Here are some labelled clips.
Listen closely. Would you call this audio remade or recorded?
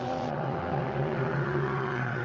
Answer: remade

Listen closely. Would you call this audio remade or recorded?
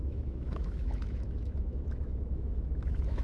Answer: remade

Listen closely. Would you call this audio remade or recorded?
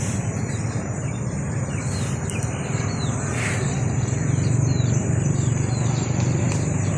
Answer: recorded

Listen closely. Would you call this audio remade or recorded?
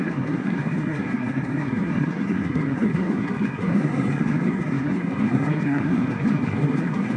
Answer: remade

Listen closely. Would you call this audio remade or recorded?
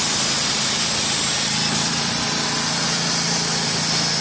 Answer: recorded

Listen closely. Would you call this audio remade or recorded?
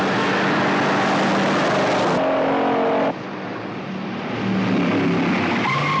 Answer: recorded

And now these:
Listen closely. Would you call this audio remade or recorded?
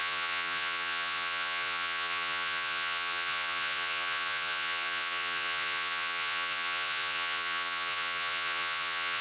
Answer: remade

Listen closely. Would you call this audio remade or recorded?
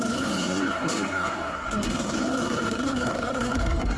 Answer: remade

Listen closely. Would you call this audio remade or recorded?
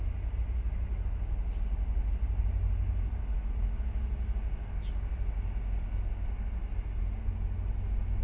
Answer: recorded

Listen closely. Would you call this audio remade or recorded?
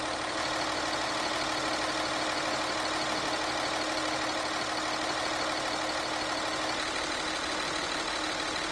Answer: recorded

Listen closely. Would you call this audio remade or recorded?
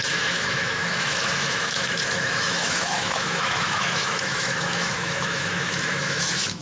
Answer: remade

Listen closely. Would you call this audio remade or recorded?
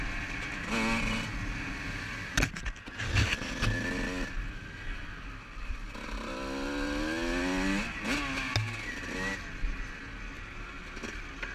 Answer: recorded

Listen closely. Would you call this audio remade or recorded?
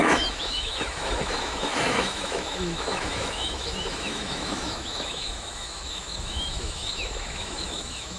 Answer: remade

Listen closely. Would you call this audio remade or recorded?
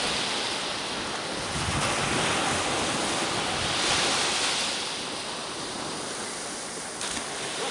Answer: recorded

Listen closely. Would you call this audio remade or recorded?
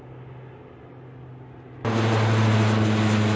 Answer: recorded